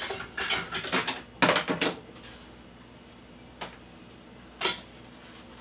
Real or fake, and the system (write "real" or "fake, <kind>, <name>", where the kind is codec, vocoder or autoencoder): real